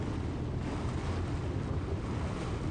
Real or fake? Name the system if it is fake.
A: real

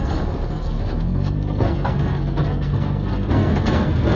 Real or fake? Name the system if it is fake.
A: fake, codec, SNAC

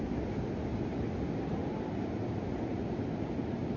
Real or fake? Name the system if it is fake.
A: real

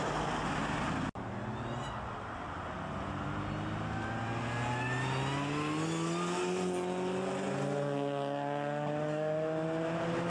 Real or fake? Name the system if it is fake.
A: real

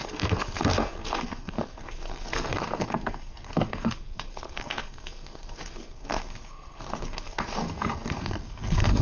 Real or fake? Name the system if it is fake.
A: fake, codec, SNAC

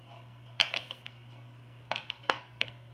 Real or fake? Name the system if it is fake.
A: fake, codec, SNAC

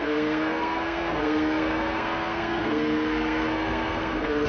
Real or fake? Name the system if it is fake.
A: fake, codec, SNAC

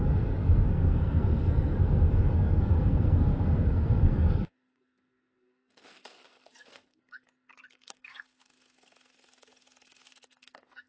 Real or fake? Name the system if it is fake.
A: fake, codec, SNAC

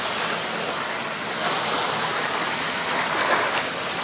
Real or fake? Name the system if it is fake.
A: real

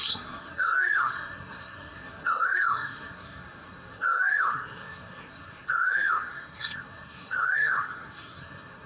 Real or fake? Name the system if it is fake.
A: fake, codec, SNAC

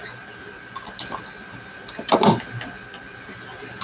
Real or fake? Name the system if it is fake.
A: real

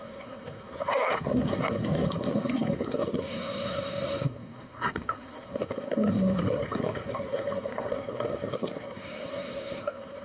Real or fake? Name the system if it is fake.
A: fake, codec, SNAC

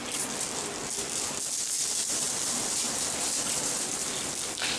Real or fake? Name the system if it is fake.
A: real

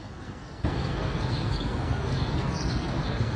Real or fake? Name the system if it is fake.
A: fake, codec, SNAC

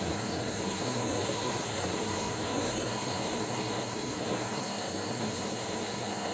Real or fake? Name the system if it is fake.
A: fake, codec, SNAC